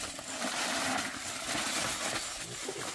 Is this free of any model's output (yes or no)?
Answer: yes